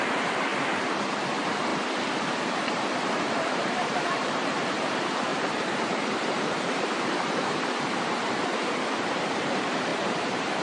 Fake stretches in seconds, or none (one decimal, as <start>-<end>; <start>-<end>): 0.0-1.7; 2.5-10.6